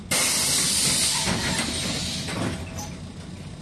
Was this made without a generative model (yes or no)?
yes